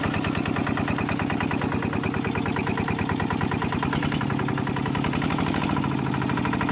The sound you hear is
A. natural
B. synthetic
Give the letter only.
A